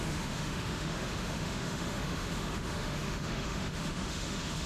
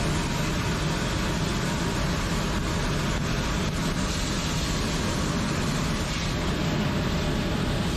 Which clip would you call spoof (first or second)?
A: first